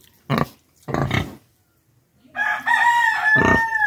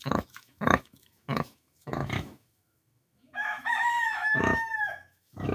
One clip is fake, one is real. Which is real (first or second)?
first